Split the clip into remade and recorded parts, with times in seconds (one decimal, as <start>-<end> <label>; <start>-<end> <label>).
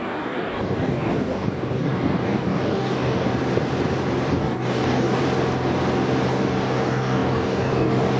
0.0-3.3 remade; 3.3-4.3 recorded; 4.3-5.2 remade; 5.2-6.3 recorded; 6.3-8.2 remade